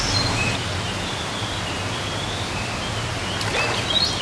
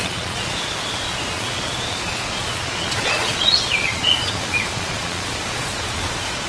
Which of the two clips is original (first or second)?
first